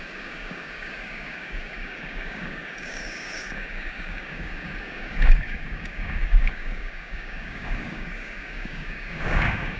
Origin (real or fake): fake